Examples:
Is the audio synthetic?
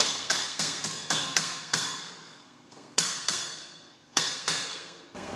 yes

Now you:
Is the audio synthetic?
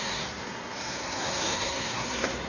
yes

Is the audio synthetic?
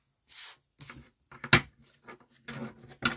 no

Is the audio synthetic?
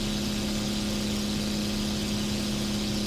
no